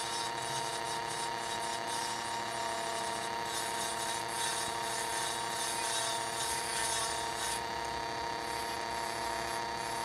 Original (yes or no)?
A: yes